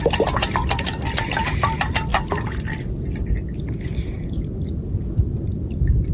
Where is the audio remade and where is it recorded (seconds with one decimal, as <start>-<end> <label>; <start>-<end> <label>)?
0.0-6.1 recorded